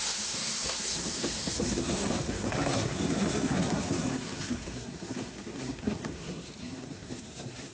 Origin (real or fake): fake